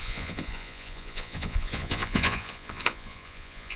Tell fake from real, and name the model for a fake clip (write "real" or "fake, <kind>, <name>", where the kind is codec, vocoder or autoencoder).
fake, vocoder, Vocos